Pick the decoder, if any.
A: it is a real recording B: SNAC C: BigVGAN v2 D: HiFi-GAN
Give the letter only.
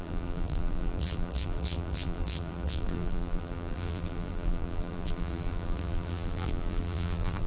C